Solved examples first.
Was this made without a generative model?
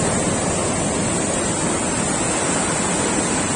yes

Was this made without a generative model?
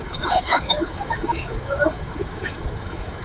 no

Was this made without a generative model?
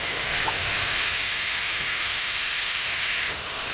no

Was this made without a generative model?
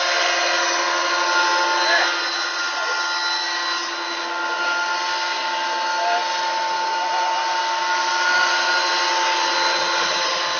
yes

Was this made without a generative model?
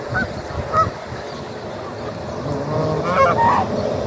yes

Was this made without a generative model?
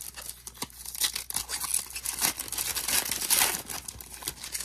yes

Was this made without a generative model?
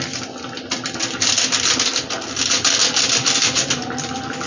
yes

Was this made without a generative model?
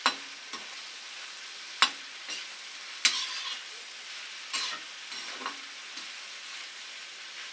yes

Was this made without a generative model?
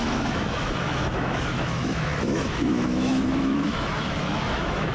no